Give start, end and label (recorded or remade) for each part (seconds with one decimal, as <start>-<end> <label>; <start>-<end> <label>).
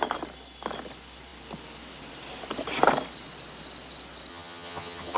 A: 0.0-4.3 recorded; 4.3-5.2 remade